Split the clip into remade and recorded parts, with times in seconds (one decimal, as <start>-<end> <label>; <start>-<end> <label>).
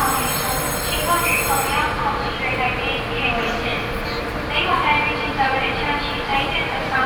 0.0-7.1 recorded